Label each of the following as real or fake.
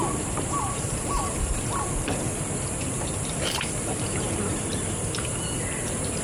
real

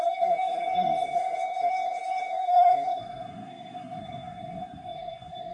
fake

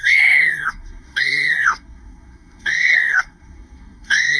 fake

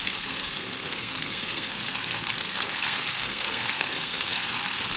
fake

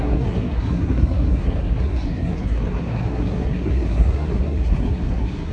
fake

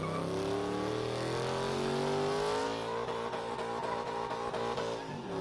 real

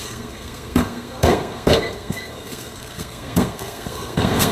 fake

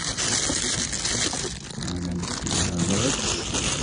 real